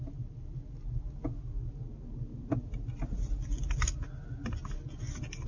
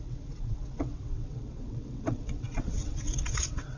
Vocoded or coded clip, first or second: second